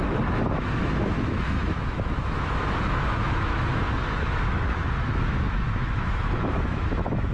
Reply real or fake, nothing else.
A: fake